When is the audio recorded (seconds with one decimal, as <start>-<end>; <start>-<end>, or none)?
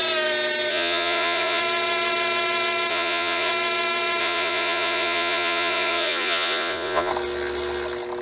0.0-0.7; 1.6-2.9; 3.5-4.2; 7.1-8.2